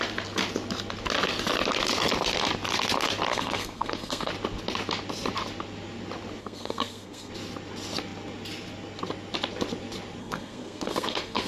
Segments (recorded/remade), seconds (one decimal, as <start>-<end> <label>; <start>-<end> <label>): 0.0-3.3 recorded; 3.3-4.3 remade; 4.3-6.4 recorded; 6.4-7.3 remade; 7.3-10.2 recorded; 10.2-11.5 remade